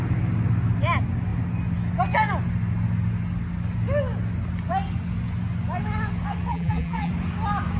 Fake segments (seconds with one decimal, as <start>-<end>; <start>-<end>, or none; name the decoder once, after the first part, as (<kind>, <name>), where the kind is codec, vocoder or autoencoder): 6.5-7.1 (vocoder, BigVGAN v2)